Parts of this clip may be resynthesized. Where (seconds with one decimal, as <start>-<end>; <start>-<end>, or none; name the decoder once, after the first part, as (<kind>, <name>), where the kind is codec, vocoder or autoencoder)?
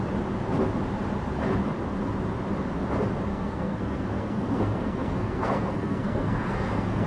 3.3-7.1 (codec, SNAC)